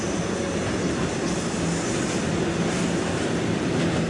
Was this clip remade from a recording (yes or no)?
no